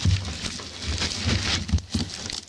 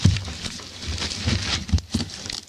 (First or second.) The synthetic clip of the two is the second